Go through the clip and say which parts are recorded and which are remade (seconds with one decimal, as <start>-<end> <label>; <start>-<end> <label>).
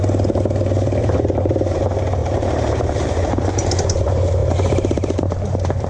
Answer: 0.0-1.0 recorded; 1.0-1.8 remade; 1.8-2.2 recorded; 2.2-3.7 remade; 3.7-4.4 recorded; 4.4-5.9 remade